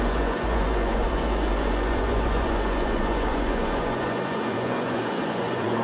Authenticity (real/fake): fake